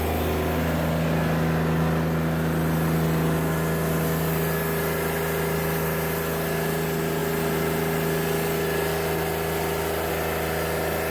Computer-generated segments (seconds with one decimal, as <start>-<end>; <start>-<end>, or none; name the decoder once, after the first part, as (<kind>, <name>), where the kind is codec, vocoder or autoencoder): none